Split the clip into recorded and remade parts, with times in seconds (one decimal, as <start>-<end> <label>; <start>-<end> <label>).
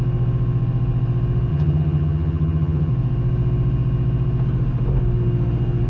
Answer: 0.0-1.5 recorded; 1.5-2.9 remade; 2.9-5.9 recorded